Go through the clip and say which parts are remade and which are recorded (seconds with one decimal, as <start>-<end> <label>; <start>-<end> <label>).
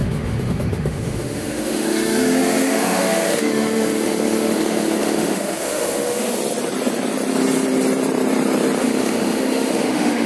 0.0-6.4 remade; 6.4-8.8 recorded; 8.8-10.3 remade